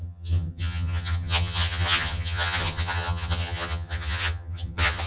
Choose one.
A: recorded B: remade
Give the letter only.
B